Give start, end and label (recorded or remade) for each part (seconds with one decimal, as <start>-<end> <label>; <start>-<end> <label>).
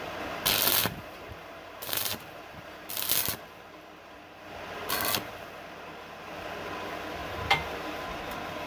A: 0.0-0.8 recorded; 0.8-2.9 remade; 2.9-7.2 recorded; 7.2-8.0 remade; 8.0-8.7 recorded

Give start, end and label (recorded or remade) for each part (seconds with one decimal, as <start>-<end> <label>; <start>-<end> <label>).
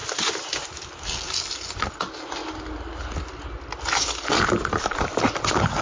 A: 0.0-5.8 recorded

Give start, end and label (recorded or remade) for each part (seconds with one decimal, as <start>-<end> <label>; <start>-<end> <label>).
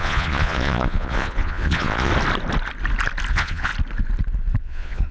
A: 0.0-2.1 remade; 2.1-3.3 recorded; 3.3-3.7 remade; 3.7-4.6 recorded; 4.6-5.1 remade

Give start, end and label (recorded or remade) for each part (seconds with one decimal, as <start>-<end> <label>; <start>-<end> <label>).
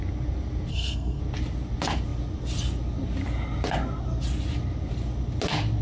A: 0.0-0.7 recorded; 0.7-1.2 remade; 1.2-5.8 recorded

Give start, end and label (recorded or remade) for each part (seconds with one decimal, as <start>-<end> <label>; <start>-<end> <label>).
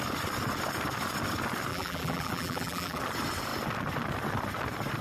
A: 0.0-1.7 recorded; 1.7-3.0 remade; 3.0-5.0 recorded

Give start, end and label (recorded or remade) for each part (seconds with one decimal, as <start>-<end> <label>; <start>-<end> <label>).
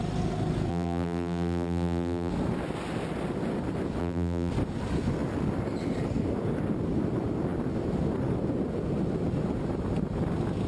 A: 0.0-0.7 recorded; 0.7-2.3 remade; 2.3-4.0 recorded; 4.0-4.5 remade; 4.5-10.7 recorded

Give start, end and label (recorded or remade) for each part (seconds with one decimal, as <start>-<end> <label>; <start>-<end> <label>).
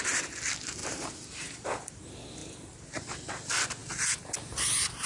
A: 0.0-0.8 recorded; 0.8-1.9 remade; 1.9-2.4 recorded; 2.4-2.9 remade; 2.9-5.0 recorded